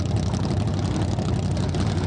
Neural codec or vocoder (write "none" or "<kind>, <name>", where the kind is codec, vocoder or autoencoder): none